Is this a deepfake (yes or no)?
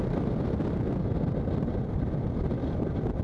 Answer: no